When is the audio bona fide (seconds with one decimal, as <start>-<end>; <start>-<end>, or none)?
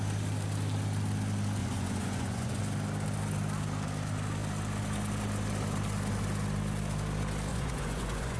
0.0-1.6; 2.6-7.5